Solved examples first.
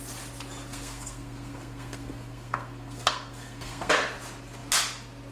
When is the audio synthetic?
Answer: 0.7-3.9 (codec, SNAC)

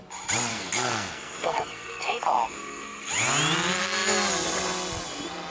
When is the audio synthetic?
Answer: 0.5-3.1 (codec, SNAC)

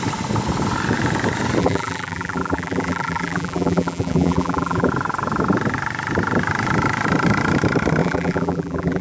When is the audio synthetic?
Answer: 1.6-4.9 (vocoder, BigVGAN v2); 8.0-9.0